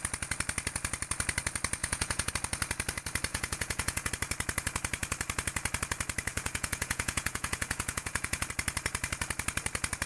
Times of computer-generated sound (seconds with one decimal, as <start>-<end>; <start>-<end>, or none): 1.8-2.3; 3.3-4.1; 6.3-8.5